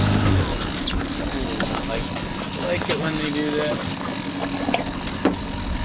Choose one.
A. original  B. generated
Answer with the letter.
A